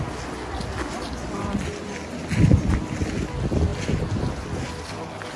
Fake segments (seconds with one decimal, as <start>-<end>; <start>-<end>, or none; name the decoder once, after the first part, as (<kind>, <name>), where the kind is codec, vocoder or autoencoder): none